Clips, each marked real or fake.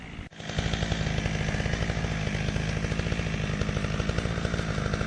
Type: real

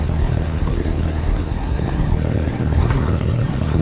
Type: fake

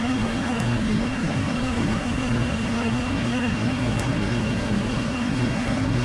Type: fake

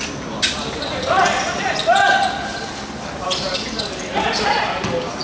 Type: real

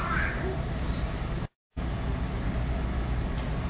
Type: real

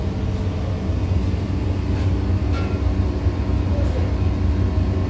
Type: real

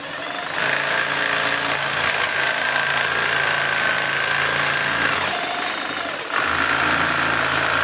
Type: real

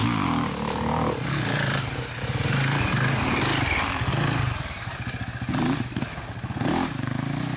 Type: real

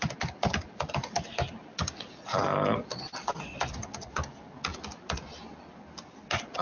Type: real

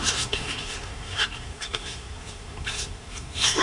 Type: fake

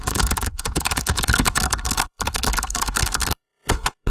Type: fake